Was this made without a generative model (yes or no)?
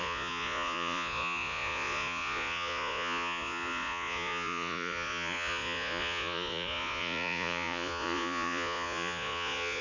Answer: no